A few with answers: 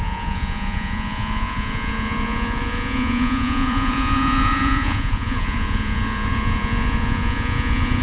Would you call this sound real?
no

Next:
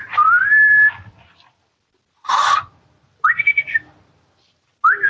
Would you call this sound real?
yes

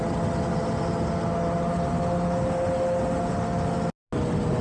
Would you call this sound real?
yes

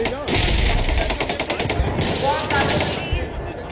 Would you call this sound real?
yes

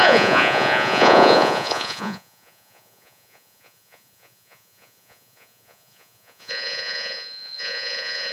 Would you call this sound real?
no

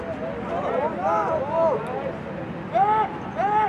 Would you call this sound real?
yes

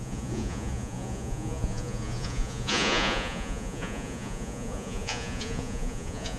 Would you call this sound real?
no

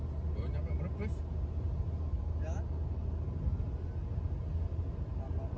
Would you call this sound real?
yes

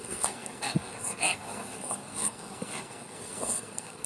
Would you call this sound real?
no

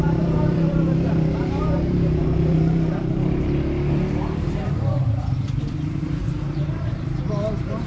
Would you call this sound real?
no